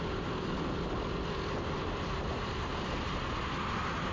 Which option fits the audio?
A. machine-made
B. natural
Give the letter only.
B